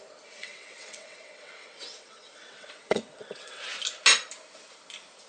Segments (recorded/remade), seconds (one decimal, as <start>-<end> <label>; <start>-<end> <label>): 0.0-0.4 recorded; 0.4-3.6 remade; 3.6-5.3 recorded